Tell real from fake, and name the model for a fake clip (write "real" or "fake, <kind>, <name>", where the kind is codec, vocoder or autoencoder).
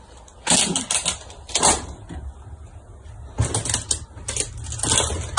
real